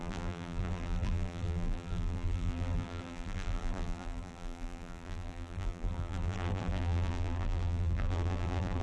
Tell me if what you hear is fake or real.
fake